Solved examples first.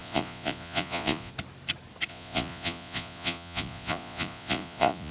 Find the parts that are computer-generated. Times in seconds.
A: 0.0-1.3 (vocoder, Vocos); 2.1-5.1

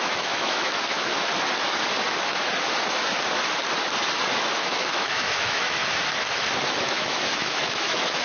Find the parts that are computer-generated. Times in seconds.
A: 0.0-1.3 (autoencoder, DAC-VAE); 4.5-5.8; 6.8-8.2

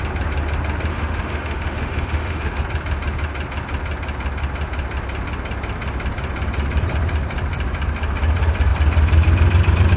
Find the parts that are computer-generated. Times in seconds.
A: 0.9-2.6 (autoencoder, DAC-VAE)